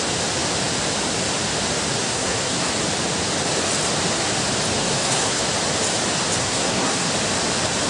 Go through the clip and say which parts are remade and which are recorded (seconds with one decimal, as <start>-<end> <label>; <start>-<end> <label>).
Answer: 0.0-2.0 recorded; 2.0-2.7 remade; 2.7-4.8 recorded; 4.8-5.4 remade; 5.4-6.4 recorded; 6.4-7.1 remade; 7.1-7.9 recorded